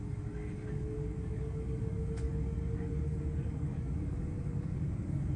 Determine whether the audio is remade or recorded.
remade